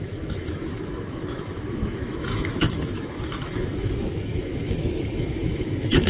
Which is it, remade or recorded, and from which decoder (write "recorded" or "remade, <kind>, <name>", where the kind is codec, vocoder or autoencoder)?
remade, autoencoder, DAC-VAE